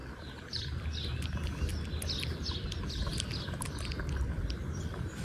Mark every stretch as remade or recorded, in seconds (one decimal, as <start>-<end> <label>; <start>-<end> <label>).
0.0-5.2 recorded